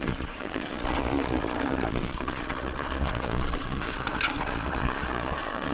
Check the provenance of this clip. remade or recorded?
remade